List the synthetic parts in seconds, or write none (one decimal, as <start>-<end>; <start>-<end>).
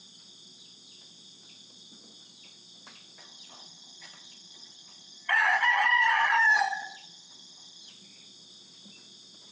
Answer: 3.2-7.9